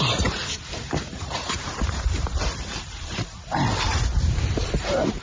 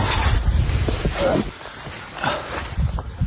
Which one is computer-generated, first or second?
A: first